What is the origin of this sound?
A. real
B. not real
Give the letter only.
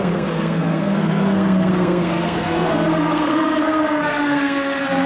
B